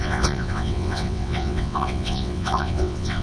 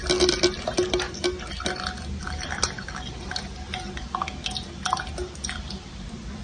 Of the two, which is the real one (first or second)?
second